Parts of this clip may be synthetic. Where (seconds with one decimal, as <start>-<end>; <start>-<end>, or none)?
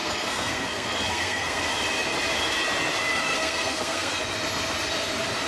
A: 0.0-1.6; 3.3-4.2